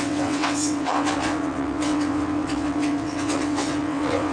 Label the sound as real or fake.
fake